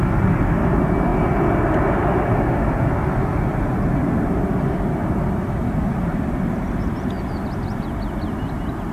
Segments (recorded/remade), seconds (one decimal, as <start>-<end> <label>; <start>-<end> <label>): 0.0-6.1 recorded; 6.1-7.2 remade; 7.2-8.9 recorded